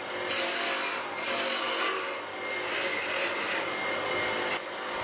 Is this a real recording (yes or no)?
yes